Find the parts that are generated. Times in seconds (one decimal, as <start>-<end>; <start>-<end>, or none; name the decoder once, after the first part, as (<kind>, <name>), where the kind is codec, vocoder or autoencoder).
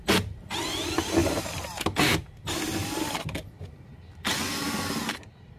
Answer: none